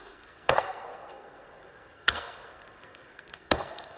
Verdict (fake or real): fake